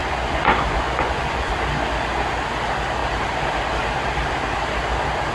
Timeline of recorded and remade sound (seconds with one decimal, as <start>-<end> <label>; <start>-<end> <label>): 0.0-1.5 remade; 1.5-5.3 recorded